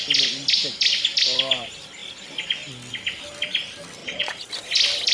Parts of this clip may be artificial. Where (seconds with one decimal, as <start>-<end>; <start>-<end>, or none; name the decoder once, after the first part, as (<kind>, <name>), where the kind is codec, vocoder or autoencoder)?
4.0-4.5 (vocoder, Vocos)